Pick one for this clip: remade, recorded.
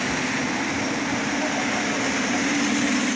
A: recorded